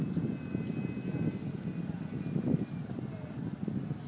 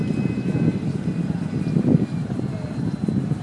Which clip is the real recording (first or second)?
first